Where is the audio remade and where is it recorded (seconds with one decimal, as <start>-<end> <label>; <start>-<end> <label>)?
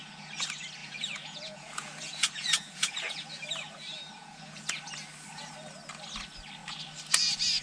0.0-0.8 recorded; 0.8-3.3 remade; 3.3-4.2 recorded; 4.2-4.8 remade; 4.8-7.6 recorded